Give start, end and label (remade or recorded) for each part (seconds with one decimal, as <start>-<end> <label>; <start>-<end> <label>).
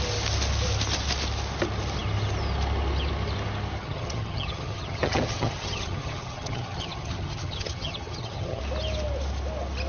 0.0-3.8 recorded; 3.8-8.6 remade; 8.6-9.9 recorded